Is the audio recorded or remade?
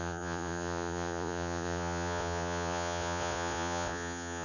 remade